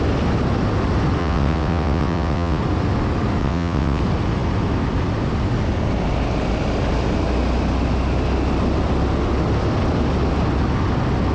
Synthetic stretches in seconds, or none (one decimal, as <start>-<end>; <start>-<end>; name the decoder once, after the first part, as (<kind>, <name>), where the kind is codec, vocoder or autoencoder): 1.2-2.6 (vocoder, WaveNeXt); 3.4-4.0